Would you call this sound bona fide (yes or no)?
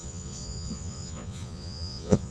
no